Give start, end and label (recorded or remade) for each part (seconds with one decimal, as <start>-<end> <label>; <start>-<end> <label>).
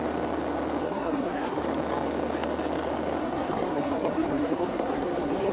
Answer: 0.0-0.8 recorded; 0.8-1.6 remade; 1.6-3.2 recorded; 3.2-5.5 remade